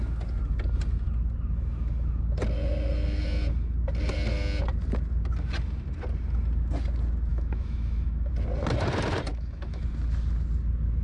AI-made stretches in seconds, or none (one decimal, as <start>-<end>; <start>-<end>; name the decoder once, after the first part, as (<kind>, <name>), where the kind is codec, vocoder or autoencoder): 7.3-8.3 (autoencoder, DAC-VAE); 9.3-9.8